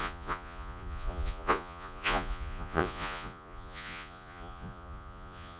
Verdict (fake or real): fake